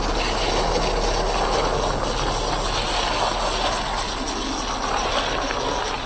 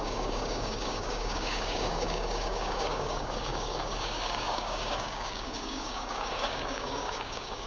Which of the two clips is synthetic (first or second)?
second